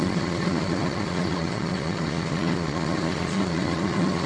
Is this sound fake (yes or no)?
yes